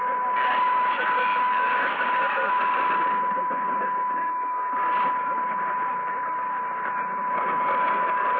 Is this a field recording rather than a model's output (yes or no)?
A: yes